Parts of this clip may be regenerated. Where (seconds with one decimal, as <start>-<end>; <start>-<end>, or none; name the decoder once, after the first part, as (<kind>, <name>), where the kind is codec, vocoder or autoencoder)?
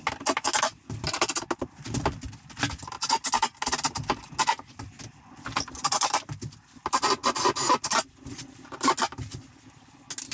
none